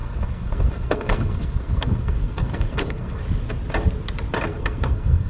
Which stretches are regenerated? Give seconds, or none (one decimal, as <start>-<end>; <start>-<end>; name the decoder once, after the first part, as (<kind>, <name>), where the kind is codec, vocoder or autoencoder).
0.0-3.2 (codec, SNAC); 4.5-5.3